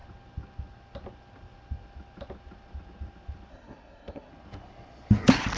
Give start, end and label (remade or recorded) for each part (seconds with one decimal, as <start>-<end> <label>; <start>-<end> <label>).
0.0-3.5 recorded; 3.5-4.3 remade; 4.3-5.6 recorded